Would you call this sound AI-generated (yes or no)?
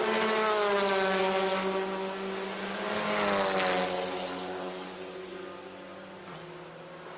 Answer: no